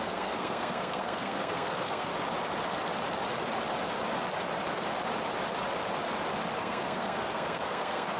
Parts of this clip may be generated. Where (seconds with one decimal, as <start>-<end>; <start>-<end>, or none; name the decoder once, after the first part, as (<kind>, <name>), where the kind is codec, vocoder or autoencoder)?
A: 0.0-2.1 (codec, SNAC); 6.6-8.2